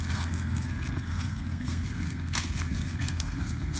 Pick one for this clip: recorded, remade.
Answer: remade